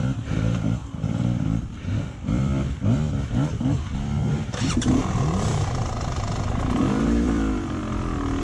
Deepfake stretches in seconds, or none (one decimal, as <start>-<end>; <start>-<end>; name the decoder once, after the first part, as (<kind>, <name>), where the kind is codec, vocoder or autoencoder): 0.0-8.4 (vocoder, BigVGAN v2)